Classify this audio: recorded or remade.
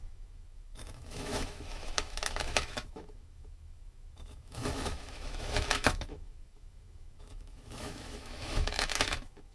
remade